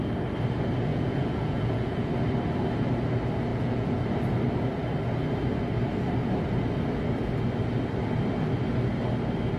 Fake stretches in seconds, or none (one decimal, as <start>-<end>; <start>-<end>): 0.9-2.1; 3.5-4.0